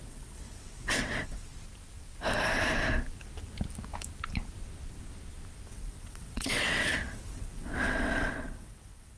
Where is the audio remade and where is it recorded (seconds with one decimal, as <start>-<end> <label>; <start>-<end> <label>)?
0.0-1.5 remade; 1.5-5.7 recorded; 5.7-9.2 remade